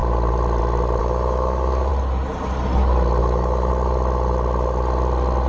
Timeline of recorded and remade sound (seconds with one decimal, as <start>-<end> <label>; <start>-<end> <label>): 0.0-1.0 recorded; 1.0-1.9 remade; 1.9-3.2 recorded; 3.2-3.7 remade; 3.7-5.5 recorded